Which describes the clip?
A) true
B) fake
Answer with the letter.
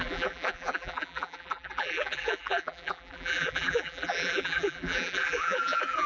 B